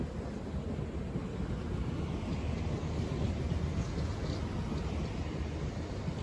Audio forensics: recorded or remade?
recorded